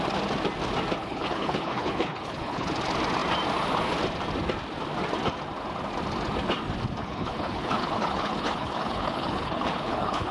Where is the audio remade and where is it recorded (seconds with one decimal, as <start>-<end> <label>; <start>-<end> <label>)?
0.0-1.0 recorded; 1.0-2.7 remade; 2.7-7.0 recorded; 7.0-10.3 remade